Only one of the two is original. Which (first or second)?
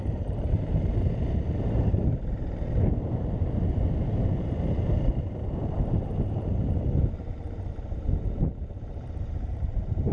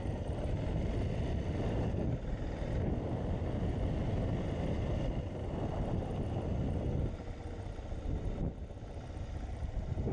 second